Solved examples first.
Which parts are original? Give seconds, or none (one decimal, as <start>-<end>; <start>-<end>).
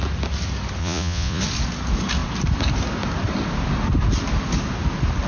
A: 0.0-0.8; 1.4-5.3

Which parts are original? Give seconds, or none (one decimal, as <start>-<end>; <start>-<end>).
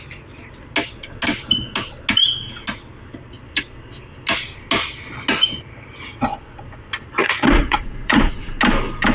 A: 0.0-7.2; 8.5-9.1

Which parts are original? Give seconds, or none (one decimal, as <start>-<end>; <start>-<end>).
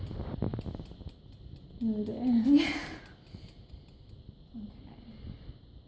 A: 0.0-5.9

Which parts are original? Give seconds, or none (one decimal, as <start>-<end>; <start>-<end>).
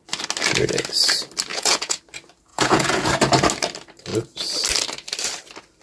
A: 0.0-1.5; 2.0-2.5; 3.1-5.8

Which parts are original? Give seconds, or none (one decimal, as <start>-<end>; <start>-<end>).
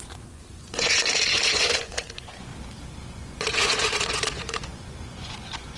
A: 2.5-3.1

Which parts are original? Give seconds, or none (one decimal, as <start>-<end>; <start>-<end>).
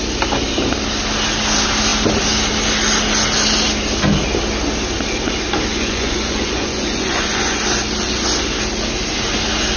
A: 0.0-5.7; 7.6-9.8